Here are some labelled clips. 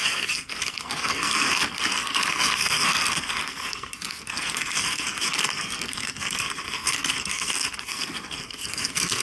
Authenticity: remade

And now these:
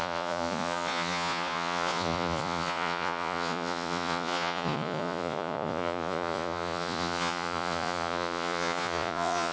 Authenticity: remade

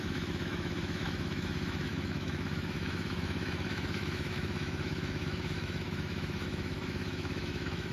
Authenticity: remade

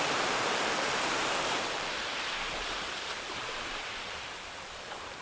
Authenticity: remade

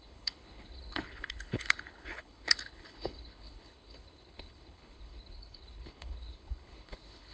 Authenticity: remade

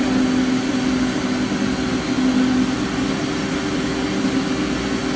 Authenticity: recorded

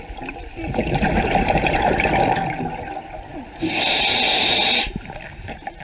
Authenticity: recorded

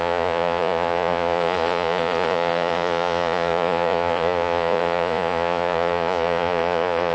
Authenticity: remade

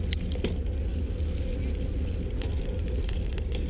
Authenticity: recorded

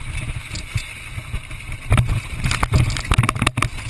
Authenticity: recorded